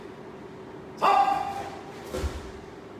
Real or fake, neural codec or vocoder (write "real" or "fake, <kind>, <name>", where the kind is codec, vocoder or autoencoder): real